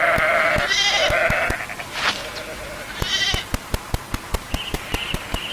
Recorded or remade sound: recorded